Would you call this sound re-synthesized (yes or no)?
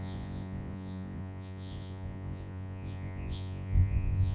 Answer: yes